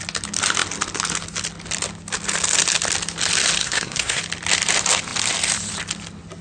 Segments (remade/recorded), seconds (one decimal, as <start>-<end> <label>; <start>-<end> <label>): 0.0-3.6 recorded; 3.6-4.2 remade; 4.2-6.4 recorded